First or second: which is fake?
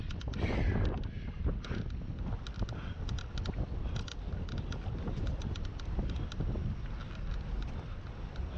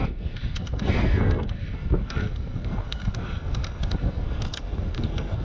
second